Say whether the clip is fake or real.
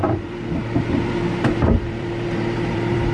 fake